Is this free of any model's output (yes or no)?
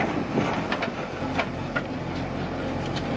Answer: yes